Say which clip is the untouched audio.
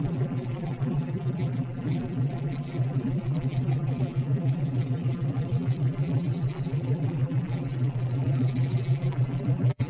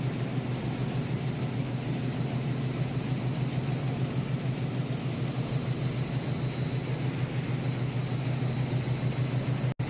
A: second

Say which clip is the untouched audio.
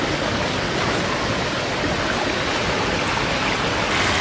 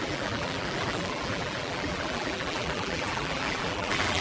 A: first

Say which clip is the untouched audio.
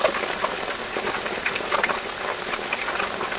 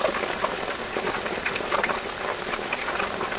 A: first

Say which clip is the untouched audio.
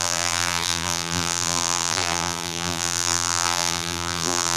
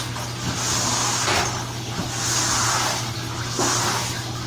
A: second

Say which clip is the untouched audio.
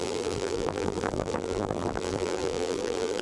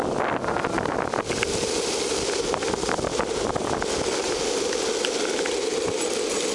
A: second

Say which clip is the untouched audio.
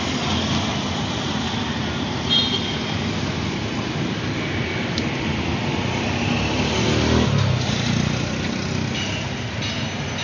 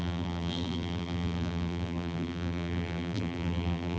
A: first